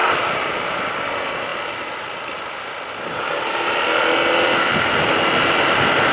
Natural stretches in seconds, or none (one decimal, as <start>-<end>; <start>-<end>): 0.0-6.1